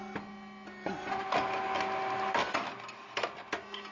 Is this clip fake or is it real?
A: real